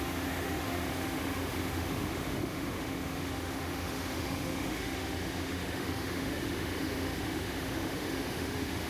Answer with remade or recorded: remade